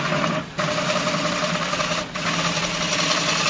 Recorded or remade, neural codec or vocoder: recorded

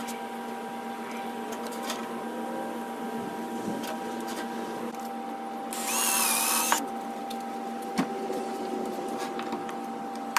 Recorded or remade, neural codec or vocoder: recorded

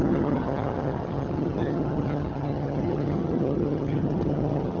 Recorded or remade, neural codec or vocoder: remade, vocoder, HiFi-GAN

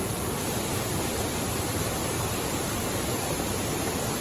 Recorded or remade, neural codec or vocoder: remade, vocoder, BigVGAN v2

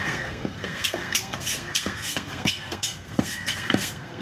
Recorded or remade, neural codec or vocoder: remade, codec, SNAC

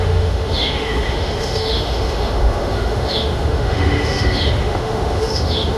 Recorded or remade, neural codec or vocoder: remade, autoencoder, DAC-VAE